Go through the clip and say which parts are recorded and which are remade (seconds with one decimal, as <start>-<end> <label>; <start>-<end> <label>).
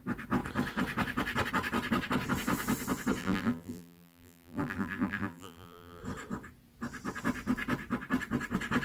0.0-3.2 recorded; 3.2-6.0 remade; 6.0-8.8 recorded